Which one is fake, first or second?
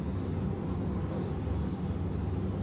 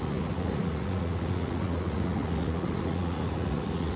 second